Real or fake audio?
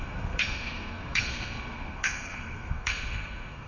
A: fake